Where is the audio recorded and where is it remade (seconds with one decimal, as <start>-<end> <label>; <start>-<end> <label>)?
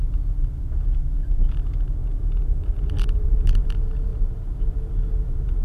0.0-2.0 recorded; 2.0-3.5 remade; 3.5-5.6 recorded